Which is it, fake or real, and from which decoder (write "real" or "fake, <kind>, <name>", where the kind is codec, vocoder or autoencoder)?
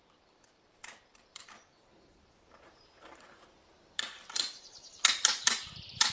fake, vocoder, BigVGAN v2